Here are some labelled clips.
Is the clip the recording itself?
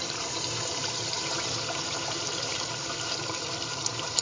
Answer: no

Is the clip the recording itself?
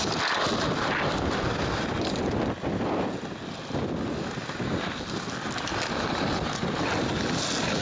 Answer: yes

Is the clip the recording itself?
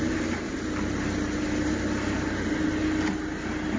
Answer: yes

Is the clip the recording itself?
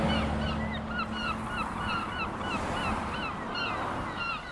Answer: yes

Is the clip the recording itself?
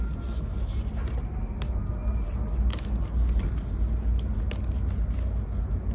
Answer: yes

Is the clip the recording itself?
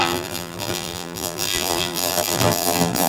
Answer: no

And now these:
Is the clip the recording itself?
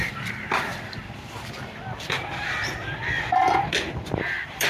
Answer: no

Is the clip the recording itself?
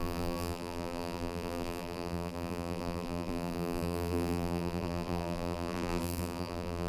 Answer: no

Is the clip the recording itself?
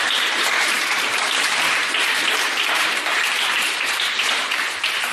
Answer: no